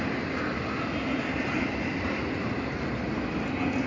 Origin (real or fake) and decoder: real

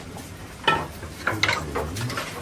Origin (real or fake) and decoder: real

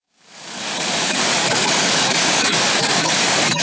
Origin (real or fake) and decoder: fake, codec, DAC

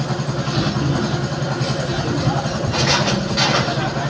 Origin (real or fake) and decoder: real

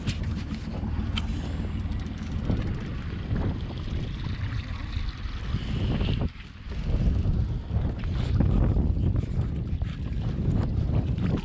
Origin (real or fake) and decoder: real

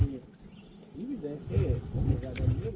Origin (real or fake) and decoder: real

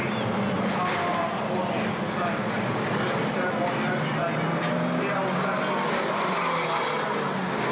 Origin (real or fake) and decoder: real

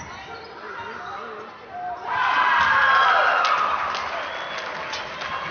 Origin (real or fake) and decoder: real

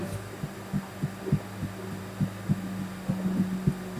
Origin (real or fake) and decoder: real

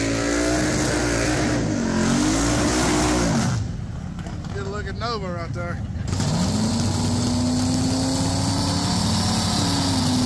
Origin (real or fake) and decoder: real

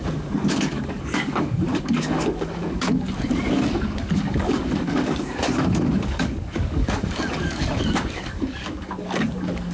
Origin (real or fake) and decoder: fake, codec, DAC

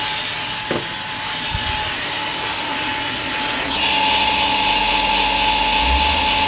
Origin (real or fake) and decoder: real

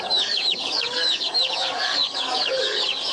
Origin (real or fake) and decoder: fake, codec, DAC